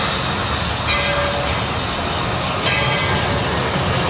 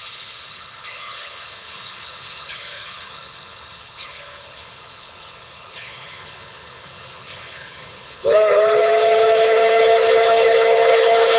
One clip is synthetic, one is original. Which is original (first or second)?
first